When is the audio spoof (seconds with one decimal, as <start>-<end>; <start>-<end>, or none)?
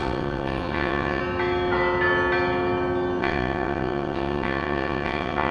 0.0-1.2; 3.2-5.5